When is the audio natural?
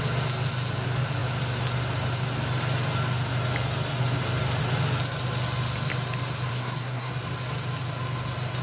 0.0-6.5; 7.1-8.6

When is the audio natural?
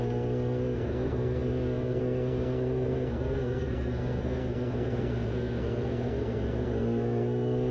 none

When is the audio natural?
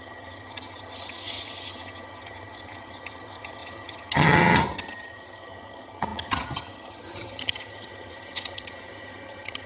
none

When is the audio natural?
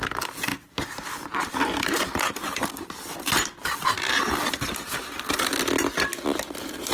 0.0-0.5; 4.6-6.9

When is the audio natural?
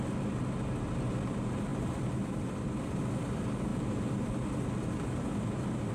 0.0-1.7; 3.0-5.9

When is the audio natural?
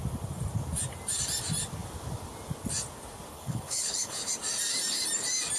0.0-3.3; 4.3-5.6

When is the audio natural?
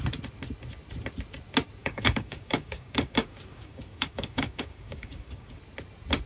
0.0-1.8; 5.6-6.3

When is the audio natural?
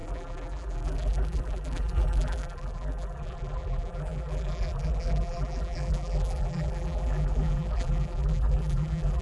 none